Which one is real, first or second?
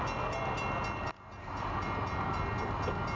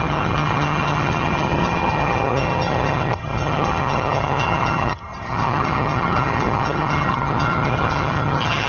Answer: first